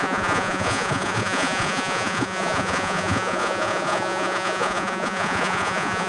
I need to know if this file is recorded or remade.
remade